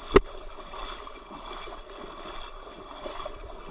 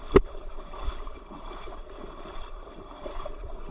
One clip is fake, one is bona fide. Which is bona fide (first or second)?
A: first